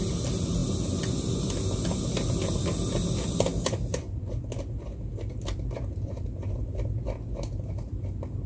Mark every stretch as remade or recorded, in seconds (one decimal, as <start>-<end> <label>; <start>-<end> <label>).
0.0-8.5 recorded